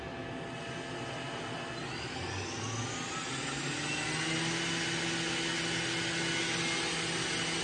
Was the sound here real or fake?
real